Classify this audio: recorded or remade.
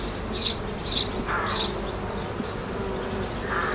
recorded